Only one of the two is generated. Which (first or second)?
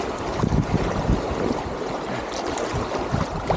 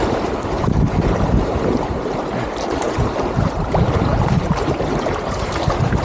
second